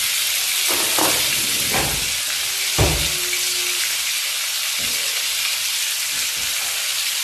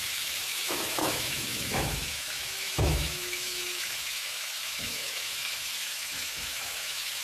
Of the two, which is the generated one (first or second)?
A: second